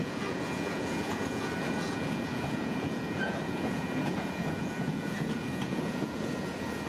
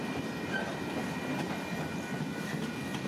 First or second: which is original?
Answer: second